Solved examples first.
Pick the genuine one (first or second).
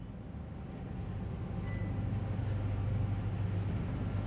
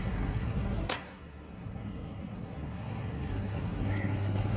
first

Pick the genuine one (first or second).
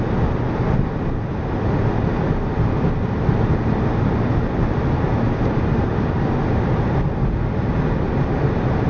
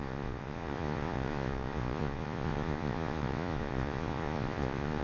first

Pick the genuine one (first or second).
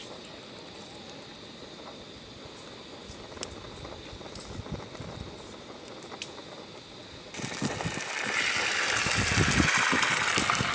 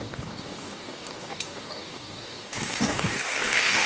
first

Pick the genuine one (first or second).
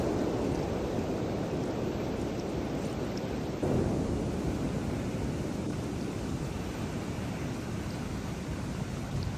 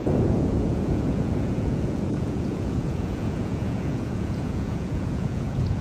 first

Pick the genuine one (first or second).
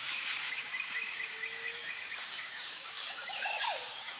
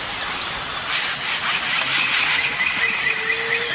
second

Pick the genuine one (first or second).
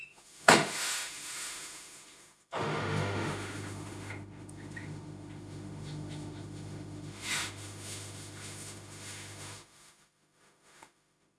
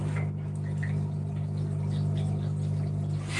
second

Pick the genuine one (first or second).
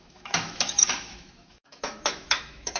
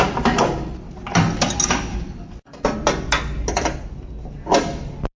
second